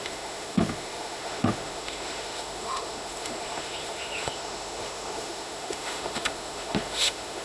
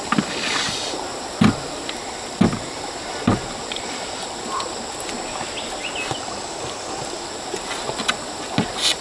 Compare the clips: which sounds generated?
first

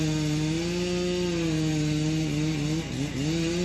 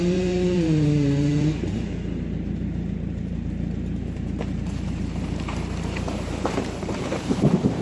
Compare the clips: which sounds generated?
second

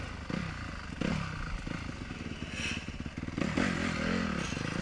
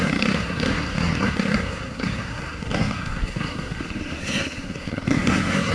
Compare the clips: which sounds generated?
second